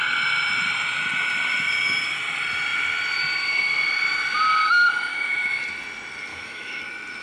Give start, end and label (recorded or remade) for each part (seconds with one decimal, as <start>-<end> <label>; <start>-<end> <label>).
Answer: 0.0-5.1 recorded; 5.1-5.6 remade; 5.6-6.3 recorded; 6.3-6.8 remade; 6.8-7.2 recorded